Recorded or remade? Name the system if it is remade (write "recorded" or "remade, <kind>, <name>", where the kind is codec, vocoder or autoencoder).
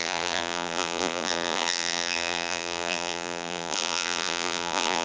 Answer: remade, vocoder, BigVGAN v2